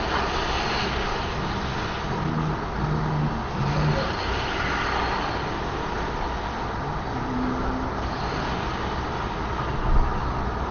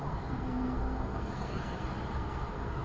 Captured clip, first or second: first